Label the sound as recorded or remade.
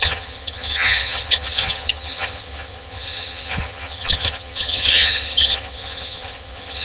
remade